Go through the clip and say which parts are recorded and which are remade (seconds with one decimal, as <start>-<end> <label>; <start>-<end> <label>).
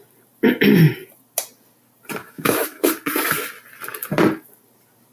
0.0-2.2 recorded; 2.2-2.9 remade; 2.9-5.1 recorded